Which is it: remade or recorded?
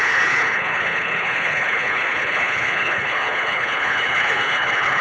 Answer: remade